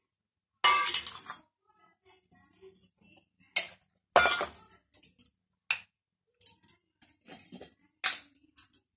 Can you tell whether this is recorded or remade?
recorded